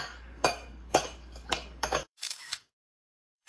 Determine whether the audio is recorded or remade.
remade